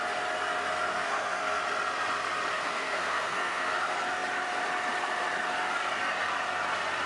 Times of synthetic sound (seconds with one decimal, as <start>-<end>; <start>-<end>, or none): 0.9-1.6; 2.5-3.8